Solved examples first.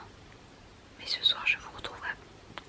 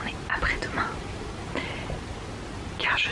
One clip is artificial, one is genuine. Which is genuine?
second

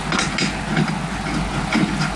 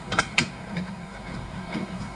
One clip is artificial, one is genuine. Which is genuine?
first